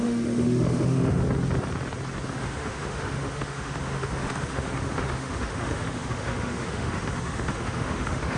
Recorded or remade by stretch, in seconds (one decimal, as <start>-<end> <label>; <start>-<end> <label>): 0.0-1.2 remade; 1.2-2.4 recorded; 2.4-8.4 remade